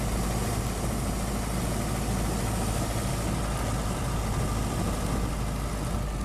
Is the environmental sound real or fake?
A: real